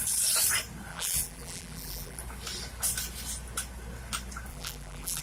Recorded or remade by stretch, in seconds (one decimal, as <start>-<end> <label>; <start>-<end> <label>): 0.0-0.9 recorded; 0.9-2.2 remade; 2.2-4.5 recorded; 4.5-5.2 remade